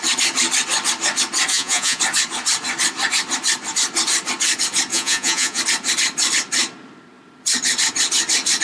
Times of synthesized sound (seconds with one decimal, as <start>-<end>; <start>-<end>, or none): 1.5-2.0; 4.9-5.6